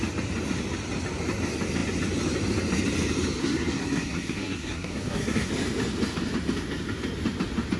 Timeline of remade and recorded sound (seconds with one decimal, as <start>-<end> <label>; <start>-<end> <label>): 0.0-3.4 recorded; 3.4-5.5 remade; 5.5-7.8 recorded